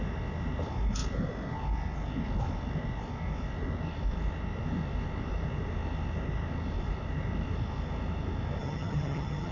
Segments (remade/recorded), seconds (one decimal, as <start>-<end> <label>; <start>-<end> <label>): 0.0-8.6 recorded; 8.6-9.5 remade